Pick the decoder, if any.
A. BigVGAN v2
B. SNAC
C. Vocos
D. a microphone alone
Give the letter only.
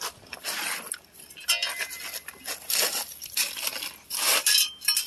D